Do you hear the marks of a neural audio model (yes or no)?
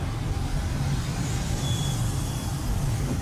no